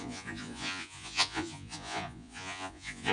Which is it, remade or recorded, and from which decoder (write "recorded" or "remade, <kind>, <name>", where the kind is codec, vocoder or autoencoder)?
remade, vocoder, Vocos